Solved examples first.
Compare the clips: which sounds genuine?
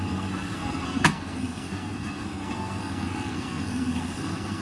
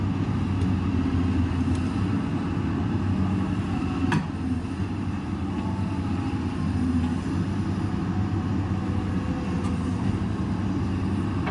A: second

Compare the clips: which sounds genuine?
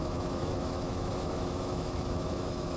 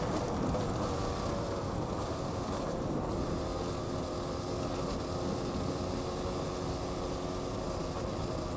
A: second